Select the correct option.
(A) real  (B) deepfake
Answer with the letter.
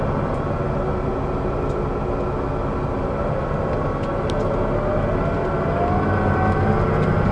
A